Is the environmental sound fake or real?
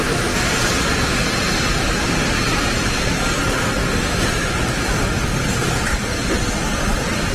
real